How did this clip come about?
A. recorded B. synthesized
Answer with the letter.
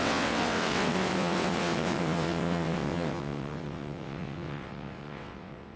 B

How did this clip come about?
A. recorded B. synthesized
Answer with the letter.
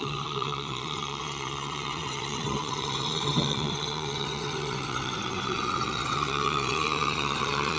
B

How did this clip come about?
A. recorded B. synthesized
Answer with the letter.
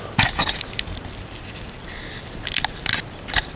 A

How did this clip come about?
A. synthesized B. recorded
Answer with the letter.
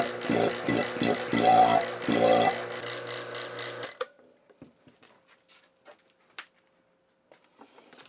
B